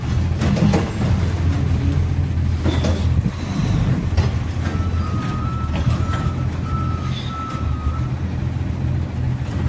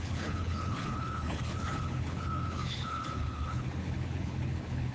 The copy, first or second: second